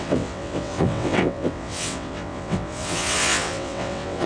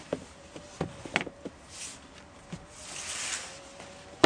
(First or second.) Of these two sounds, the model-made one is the first